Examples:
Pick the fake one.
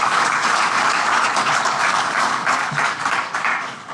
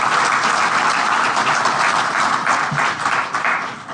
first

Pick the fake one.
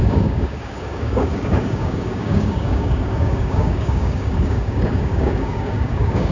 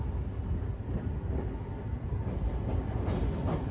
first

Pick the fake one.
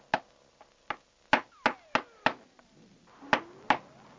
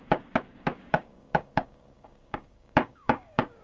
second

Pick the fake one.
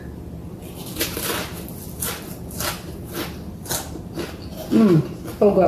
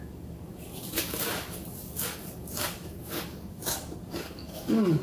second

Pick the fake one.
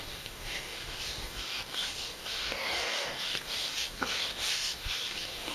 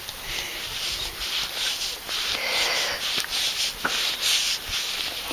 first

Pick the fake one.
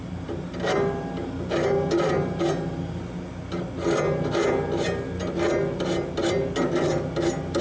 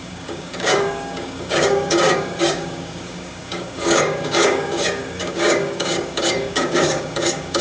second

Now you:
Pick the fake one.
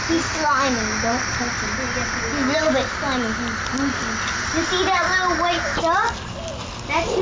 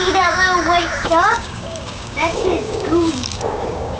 second